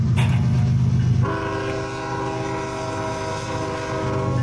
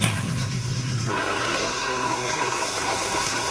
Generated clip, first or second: second